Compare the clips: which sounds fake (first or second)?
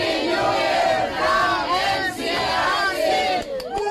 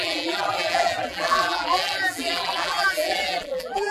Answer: second